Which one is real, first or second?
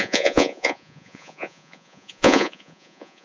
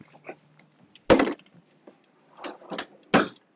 second